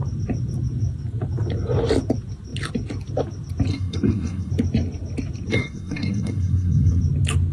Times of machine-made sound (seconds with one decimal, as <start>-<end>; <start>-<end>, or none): 3.7-4.5; 5.5-7.0

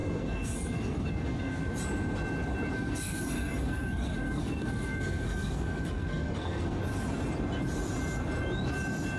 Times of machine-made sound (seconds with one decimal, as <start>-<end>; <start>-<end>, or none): 0.0-1.6; 2.7-6.8